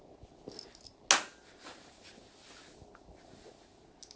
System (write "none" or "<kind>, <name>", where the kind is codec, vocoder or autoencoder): none